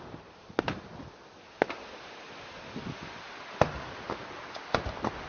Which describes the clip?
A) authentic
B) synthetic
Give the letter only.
A